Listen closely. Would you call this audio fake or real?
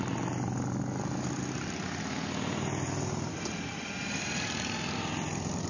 real